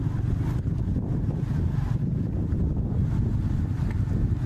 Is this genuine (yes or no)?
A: yes